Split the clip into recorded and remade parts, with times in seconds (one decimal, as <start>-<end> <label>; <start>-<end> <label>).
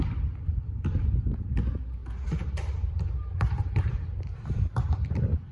0.0-2.0 recorded; 2.0-5.5 remade